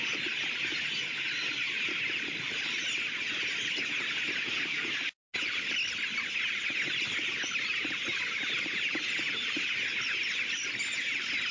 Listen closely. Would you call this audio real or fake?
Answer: real